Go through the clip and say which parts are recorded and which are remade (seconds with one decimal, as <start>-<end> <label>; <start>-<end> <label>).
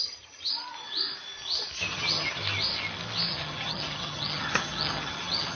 0.0-0.5 remade; 0.5-1.9 recorded; 1.9-2.4 remade; 2.4-3.3 recorded; 3.3-5.6 remade